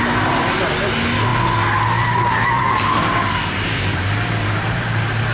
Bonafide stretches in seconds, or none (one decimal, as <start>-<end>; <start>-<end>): 0.0-5.3